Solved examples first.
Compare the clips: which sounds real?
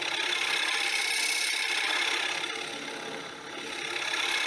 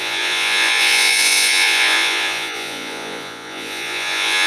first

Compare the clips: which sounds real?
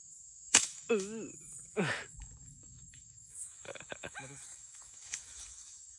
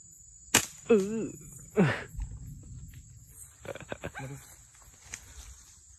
second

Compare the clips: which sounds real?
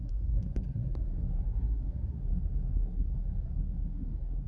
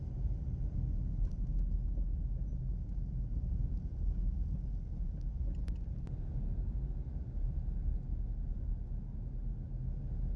second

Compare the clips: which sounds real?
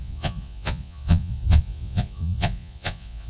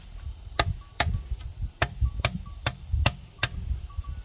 second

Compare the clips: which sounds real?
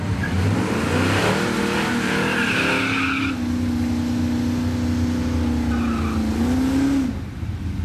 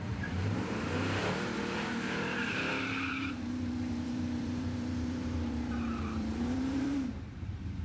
first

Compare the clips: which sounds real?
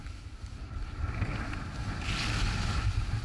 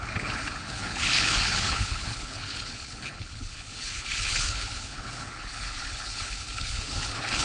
first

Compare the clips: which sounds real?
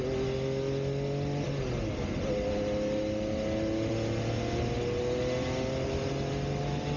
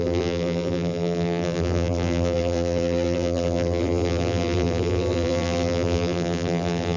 first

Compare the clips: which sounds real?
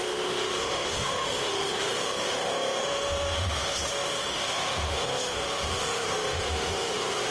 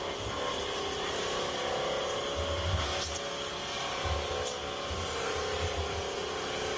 second